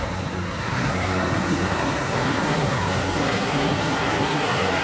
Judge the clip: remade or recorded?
remade